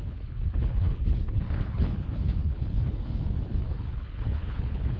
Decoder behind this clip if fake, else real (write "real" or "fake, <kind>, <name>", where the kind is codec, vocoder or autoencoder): fake, codec, HILCodec